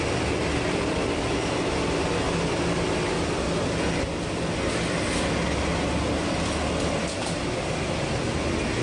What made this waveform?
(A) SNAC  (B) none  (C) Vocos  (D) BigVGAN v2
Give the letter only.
B